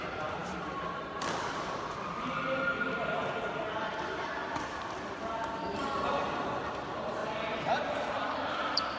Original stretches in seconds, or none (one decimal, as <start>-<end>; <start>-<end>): 0.0-9.0